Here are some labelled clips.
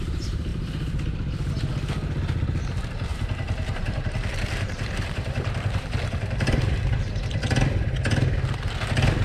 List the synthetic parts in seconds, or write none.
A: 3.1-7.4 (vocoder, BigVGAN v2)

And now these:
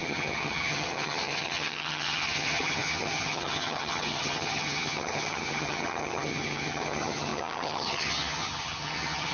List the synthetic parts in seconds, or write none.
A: 0.0-9.3 (vocoder, HiFi-GAN)